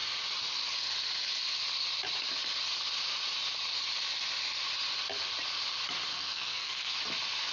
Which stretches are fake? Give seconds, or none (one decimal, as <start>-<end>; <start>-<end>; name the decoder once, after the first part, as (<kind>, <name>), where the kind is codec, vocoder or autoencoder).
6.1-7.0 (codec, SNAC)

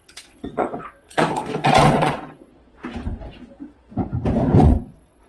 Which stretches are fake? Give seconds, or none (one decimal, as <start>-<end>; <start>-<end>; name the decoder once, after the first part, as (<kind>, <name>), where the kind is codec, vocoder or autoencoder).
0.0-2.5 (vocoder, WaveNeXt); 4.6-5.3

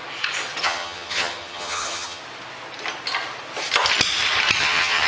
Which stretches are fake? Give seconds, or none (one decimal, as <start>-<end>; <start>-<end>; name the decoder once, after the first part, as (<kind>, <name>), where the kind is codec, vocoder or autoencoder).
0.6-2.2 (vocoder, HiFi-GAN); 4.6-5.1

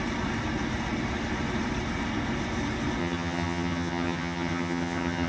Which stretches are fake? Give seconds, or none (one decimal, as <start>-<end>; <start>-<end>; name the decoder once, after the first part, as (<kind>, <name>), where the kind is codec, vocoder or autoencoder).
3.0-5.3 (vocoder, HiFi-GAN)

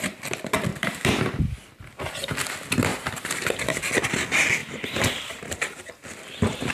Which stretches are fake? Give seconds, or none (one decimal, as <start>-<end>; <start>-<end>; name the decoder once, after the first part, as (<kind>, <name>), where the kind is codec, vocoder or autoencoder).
0.7-1.4 (vocoder, BigVGAN v2); 2.9-3.5; 4.6-5.9